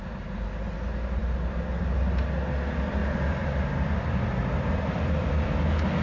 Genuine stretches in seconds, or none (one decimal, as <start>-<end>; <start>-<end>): 0.0-3.0; 5.5-6.0